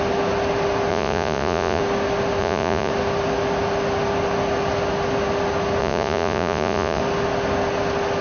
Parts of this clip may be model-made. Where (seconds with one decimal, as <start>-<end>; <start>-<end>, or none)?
0.9-1.8; 2.4-2.9; 5.8-7.0